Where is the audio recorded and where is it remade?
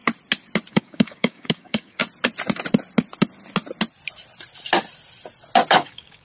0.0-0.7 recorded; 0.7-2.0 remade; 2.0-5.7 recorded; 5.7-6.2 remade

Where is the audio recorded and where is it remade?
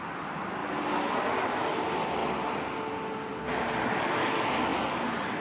0.0-5.4 recorded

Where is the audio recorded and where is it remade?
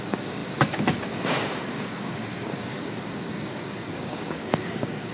0.0-5.1 remade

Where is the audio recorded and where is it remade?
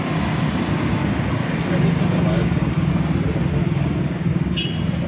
0.0-1.0 recorded; 1.0-2.9 remade; 2.9-3.5 recorded; 3.5-4.6 remade; 4.6-5.1 recorded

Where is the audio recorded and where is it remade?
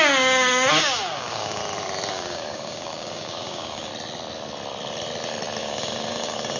0.0-1.6 remade; 1.6-2.1 recorded; 2.1-3.9 remade; 3.9-5.6 recorded; 5.6-6.6 remade